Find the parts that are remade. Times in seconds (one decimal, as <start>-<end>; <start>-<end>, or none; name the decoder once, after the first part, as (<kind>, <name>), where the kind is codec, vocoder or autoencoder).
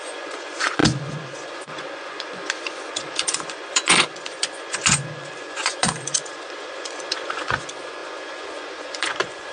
0.0-9.5 (vocoder, Vocos)